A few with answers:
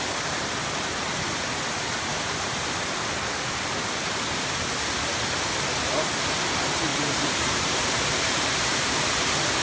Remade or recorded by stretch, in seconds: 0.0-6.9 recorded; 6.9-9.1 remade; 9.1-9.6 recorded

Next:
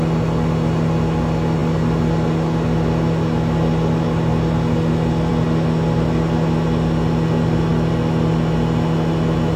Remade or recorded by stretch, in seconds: 0.0-9.6 recorded

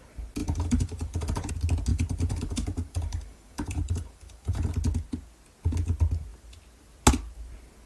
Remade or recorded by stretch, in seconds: 0.0-0.4 recorded; 0.4-1.5 remade; 1.5-1.9 recorded; 1.9-4.7 remade; 4.7-7.9 recorded

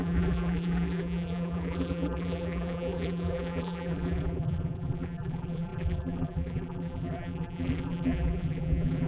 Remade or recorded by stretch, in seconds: 0.0-9.1 remade

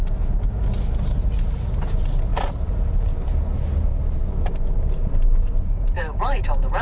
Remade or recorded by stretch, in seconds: 0.0-2.3 recorded; 2.3-6.8 remade